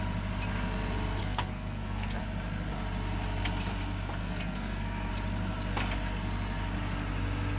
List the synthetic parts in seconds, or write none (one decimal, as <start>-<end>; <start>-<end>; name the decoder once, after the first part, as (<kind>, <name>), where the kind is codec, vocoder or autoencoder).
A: 1.2-2.2 (codec, SNAC); 4.2-5.1